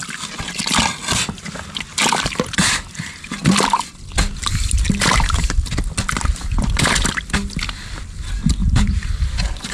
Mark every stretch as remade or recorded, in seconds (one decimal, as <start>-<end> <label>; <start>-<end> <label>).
0.0-8.6 recorded; 8.6-9.7 remade